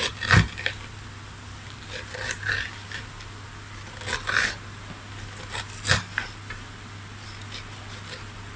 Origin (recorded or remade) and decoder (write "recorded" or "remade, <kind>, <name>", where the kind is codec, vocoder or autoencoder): recorded